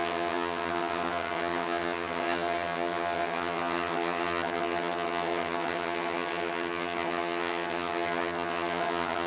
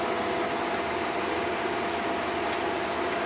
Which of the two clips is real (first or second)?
second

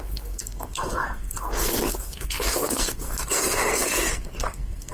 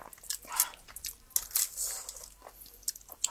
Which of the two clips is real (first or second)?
second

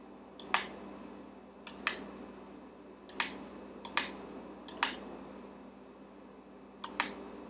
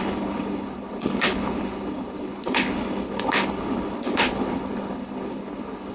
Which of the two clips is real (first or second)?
first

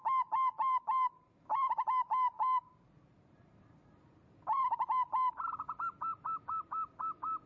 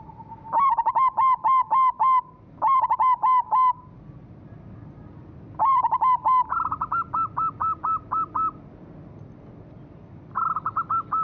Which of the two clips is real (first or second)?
second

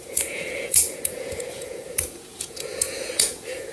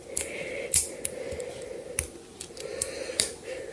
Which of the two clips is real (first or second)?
second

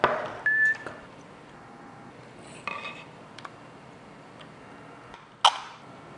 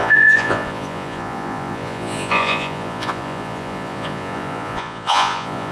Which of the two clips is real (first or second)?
first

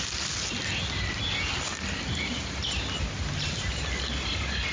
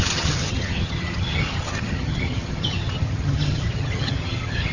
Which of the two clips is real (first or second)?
first